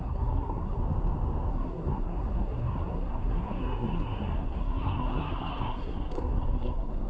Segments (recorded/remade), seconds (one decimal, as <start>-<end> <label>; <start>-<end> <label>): 0.0-0.8 remade; 0.8-1.5 recorded; 1.5-7.1 remade